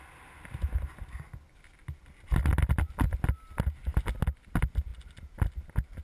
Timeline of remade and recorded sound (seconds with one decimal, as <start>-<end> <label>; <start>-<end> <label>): 0.0-6.0 recorded